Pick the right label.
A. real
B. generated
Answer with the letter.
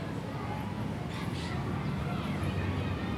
A